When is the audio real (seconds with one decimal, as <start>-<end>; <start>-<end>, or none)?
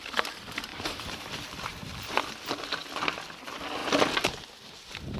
0.0-0.7; 1.3-1.8; 2.3-5.2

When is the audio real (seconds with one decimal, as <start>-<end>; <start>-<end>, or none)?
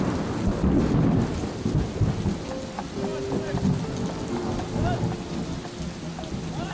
0.0-6.7